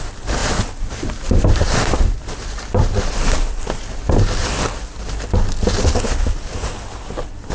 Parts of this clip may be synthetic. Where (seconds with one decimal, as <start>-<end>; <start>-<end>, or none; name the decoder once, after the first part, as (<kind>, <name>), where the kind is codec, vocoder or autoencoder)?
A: 0.4-4.1 (vocoder, BigVGAN v2)